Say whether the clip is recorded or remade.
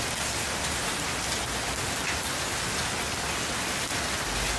recorded